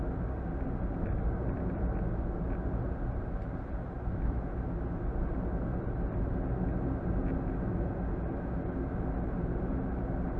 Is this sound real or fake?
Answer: real